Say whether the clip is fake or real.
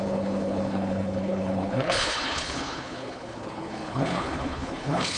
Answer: fake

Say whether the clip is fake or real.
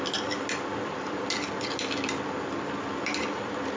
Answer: real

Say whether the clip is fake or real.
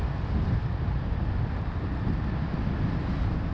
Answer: real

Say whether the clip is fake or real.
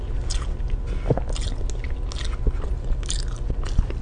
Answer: real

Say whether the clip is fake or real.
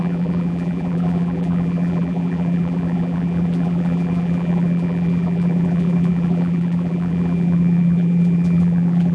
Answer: fake